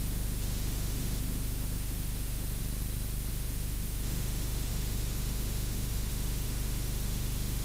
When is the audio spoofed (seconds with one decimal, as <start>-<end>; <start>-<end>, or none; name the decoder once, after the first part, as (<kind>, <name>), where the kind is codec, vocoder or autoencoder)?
0.0-2.6 (autoencoder, DAC-VAE); 3.3-7.6